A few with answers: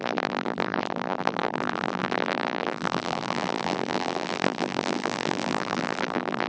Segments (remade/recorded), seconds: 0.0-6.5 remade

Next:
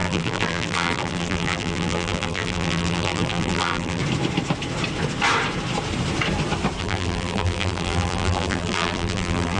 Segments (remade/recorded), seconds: 0.0-4.0 remade; 4.0-6.8 recorded; 6.8-9.6 remade

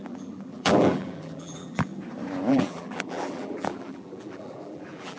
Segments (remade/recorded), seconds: 0.0-1.9 remade; 1.9-2.5 recorded; 2.5-5.2 remade

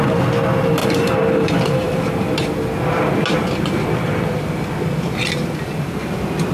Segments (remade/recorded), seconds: 0.0-0.8 recorded; 0.8-2.1 remade; 2.1-6.5 recorded

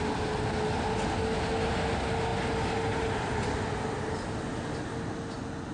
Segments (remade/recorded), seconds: 0.0-5.7 recorded

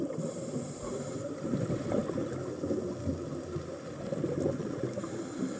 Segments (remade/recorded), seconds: 0.0-2.0 remade; 2.0-5.6 recorded